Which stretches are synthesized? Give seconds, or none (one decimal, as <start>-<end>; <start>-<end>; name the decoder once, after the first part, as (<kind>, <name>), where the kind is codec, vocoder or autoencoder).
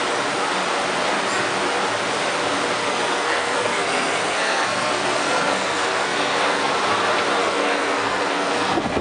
2.8-6.7 (codec, SNAC); 7.4-9.0